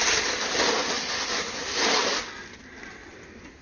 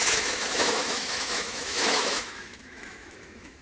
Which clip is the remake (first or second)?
second